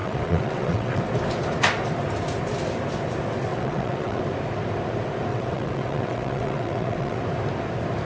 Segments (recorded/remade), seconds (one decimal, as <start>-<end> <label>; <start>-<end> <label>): 0.0-1.0 remade; 1.0-3.5 recorded; 3.5-4.2 remade; 4.2-5.3 recorded; 5.3-7.2 remade; 7.2-8.0 recorded